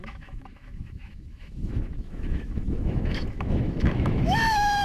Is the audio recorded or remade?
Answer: remade